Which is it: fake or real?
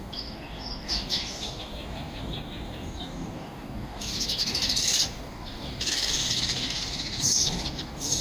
fake